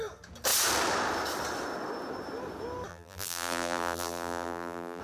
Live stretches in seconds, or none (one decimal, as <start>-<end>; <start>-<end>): 0.0-2.9

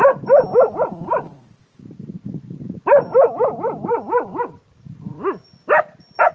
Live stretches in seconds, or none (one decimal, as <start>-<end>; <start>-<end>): 0.0-1.3; 5.1-6.3

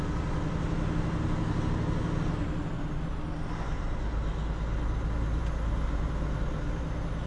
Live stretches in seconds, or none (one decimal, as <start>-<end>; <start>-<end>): 0.0-7.3